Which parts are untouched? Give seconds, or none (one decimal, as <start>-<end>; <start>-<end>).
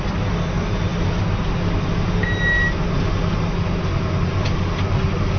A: 0.0-5.4